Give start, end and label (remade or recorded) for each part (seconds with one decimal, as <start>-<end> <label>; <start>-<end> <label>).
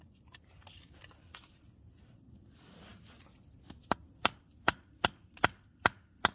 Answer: 0.0-6.3 recorded